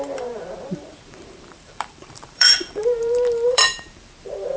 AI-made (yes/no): yes